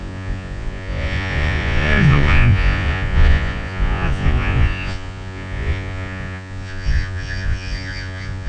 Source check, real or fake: fake